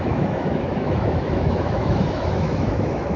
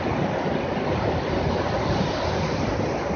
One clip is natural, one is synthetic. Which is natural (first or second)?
second